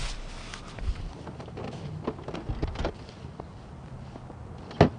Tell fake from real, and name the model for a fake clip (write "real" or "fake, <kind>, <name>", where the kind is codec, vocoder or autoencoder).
real